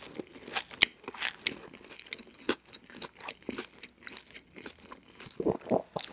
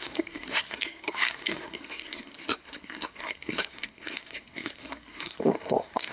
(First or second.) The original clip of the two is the first